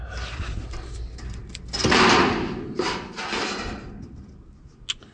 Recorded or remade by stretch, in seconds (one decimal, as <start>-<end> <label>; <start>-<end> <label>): 0.0-5.1 recorded

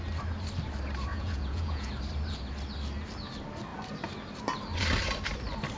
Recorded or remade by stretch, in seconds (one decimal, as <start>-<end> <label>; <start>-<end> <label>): 0.0-1.1 recorded; 1.1-1.9 remade; 1.9-5.8 recorded

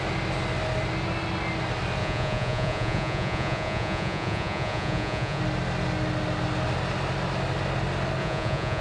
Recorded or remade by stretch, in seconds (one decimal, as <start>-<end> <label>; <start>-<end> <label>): 0.0-2.0 recorded; 2.0-5.4 remade; 5.4-8.2 recorded; 8.2-8.8 remade